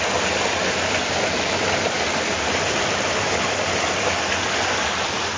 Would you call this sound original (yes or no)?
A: yes